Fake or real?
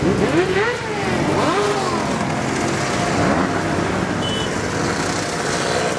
real